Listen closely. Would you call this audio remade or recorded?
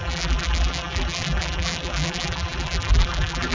remade